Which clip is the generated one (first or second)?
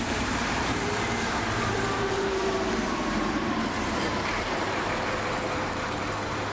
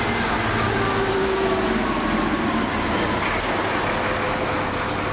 first